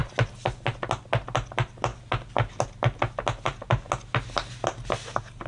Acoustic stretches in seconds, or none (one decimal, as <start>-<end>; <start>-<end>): 0.0-5.5